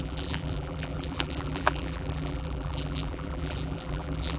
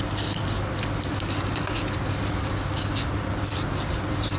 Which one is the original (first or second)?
second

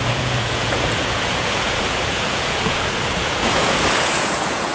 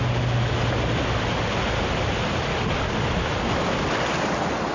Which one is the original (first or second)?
second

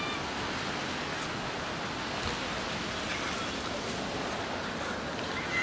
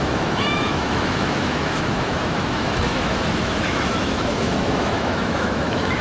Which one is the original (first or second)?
first